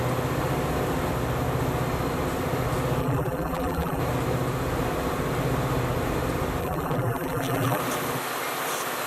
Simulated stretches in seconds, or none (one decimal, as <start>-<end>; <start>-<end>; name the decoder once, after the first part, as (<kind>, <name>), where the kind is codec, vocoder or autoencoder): 3.0-4.0 (vocoder, BigVGAN v2); 6.6-7.8